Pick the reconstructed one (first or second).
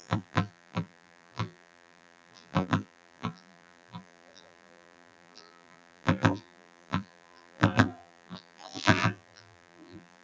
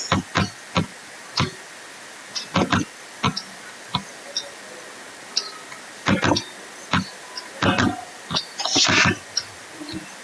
first